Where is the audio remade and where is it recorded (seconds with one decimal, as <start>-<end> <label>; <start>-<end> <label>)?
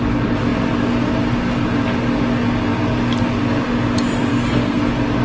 0.0-4.3 recorded; 4.3-4.8 remade; 4.8-5.2 recorded